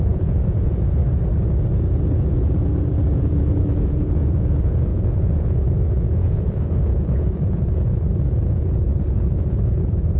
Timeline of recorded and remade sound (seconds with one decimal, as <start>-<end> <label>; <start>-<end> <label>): 0.0-1.0 remade; 1.0-3.1 recorded; 3.1-10.2 remade